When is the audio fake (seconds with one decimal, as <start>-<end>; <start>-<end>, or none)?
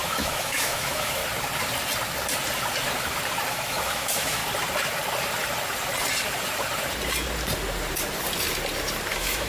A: 0.0-1.2; 3.5-4.4; 9.1-9.5